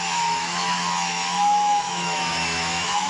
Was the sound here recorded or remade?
remade